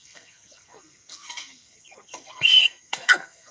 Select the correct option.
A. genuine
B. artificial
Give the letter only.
B